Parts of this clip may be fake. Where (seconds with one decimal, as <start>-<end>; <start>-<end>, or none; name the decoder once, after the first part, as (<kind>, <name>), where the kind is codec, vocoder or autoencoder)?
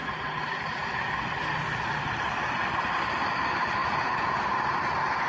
3.8-4.4 (vocoder, Vocos)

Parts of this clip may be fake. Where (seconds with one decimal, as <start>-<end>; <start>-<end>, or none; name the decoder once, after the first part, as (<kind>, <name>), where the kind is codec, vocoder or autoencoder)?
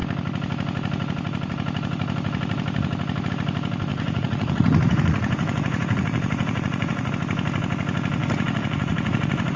3.9-7.1 (vocoder, Vocos); 8.2-9.6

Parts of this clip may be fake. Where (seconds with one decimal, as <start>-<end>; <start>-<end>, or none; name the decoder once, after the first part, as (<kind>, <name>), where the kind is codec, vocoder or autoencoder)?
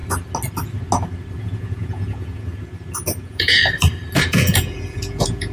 1.4-2.5 (vocoder, Vocos); 3.2-3.6; 4.2-5.5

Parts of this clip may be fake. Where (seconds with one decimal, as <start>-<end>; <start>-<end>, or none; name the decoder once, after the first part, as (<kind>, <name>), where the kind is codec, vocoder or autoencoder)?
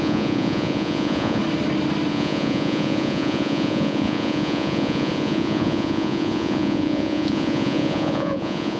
0.0-1.4 (vocoder, Vocos); 2.1-8.8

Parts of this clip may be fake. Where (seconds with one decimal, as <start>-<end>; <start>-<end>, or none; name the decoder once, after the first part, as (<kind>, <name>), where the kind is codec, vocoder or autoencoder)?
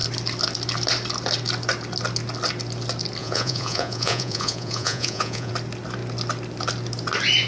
3.2-5.5 (vocoder, Vocos)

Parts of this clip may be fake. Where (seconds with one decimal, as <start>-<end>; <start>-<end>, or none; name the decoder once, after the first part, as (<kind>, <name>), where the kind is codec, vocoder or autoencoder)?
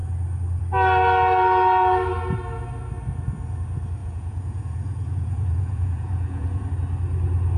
4.0-6.7 (vocoder, Vocos)